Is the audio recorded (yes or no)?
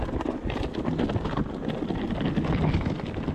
yes